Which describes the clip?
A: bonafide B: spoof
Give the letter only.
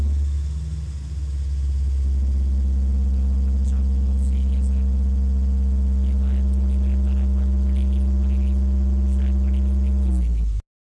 A